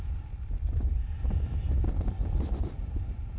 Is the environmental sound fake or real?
fake